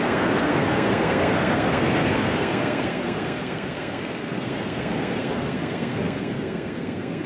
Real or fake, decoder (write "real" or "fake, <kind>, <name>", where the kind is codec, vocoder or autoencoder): fake, codec, SNAC